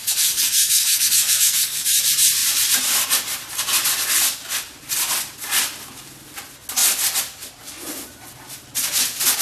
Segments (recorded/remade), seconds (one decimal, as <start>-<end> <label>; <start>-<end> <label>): 0.0-2.0 remade; 2.0-9.4 recorded